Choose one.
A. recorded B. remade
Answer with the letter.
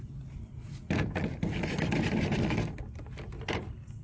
A